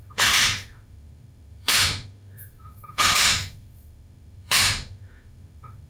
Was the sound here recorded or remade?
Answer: remade